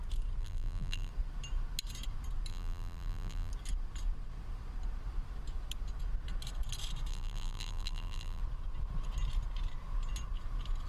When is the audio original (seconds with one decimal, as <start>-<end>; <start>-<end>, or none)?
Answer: 0.0-0.4; 1.1-2.5; 3.5-7.1; 8.4-10.9